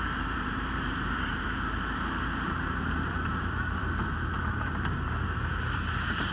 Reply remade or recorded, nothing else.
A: remade